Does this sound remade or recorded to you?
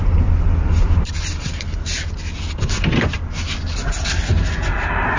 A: recorded